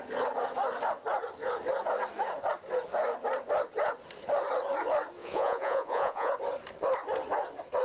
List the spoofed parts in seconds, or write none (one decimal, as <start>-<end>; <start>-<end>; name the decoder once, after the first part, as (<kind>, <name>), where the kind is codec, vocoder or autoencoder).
5.2-6.3 (vocoder, Vocos)